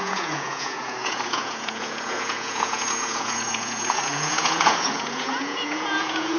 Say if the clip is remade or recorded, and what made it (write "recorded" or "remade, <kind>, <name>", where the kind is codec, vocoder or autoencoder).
remade, vocoder, Vocos